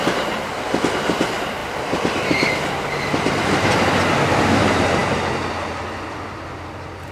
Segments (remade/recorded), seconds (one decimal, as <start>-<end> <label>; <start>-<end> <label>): 0.0-0.8 remade; 0.8-7.1 recorded